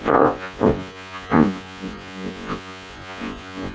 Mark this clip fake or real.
fake